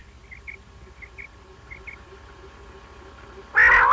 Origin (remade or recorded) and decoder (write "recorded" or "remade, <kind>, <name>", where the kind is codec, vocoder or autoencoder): recorded